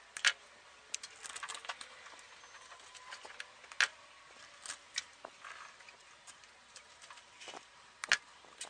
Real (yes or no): yes